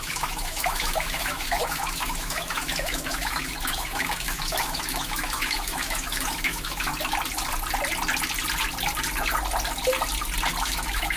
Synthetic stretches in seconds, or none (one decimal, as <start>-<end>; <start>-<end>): 0.0-6.9; 10.6-11.2